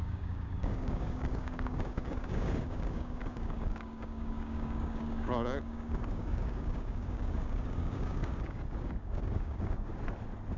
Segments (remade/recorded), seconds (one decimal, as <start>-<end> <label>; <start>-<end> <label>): 0.0-9.9 remade; 9.9-10.6 recorded